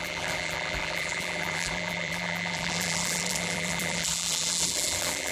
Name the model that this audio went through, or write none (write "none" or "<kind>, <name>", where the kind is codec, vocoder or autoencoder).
vocoder, BigVGAN v2